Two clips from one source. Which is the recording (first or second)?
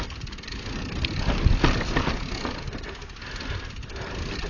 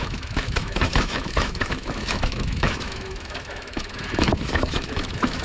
first